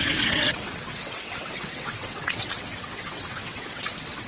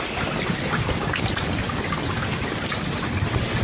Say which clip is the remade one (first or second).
first